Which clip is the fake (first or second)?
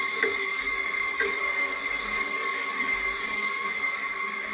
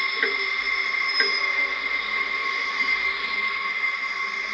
first